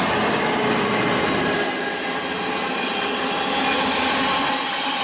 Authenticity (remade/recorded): recorded